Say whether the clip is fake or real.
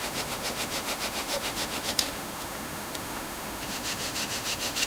fake